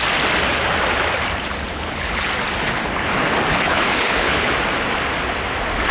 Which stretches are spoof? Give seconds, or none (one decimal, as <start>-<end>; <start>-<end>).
1.7-2.3; 3.5-4.5